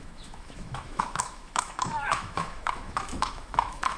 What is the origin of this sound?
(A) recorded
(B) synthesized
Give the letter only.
B